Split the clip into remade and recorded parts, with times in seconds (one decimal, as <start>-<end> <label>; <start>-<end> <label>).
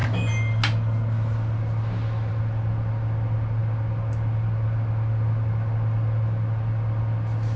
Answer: 0.0-7.6 recorded